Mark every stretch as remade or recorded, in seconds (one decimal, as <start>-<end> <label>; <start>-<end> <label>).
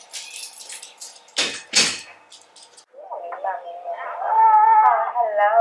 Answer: 0.0-5.6 recorded